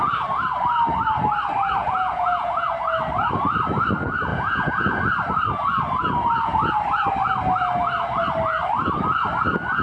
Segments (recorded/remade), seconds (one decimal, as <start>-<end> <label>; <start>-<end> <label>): 0.0-1.8 recorded; 1.8-2.7 remade; 2.7-4.3 recorded; 4.3-5.0 remade; 5.0-9.8 recorded